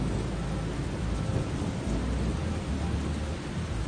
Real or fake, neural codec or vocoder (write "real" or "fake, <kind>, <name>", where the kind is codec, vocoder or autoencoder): real